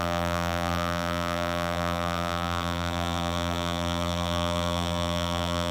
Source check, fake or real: fake